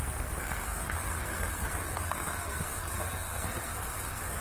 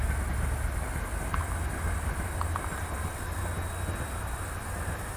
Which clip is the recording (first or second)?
second